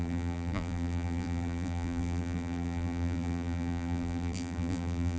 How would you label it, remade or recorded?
remade